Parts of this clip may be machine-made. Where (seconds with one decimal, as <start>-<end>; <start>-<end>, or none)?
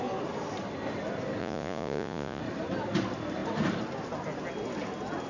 1.4-2.4